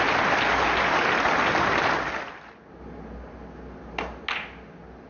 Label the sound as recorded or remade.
recorded